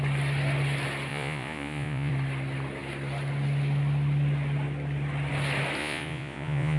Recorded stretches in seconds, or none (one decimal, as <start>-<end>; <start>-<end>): 0.0-1.1; 2.1-5.8